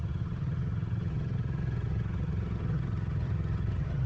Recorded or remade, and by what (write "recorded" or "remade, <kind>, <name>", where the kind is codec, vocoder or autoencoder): remade, vocoder, HiFi-GAN